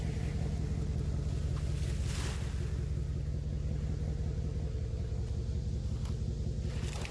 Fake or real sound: real